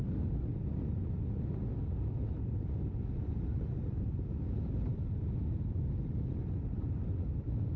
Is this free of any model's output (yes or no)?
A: yes